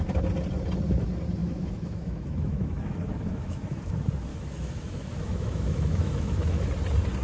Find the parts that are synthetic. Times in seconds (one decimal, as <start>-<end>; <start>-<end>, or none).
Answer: 1.4-3.9; 4.3-6.7